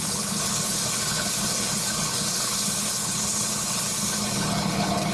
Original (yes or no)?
no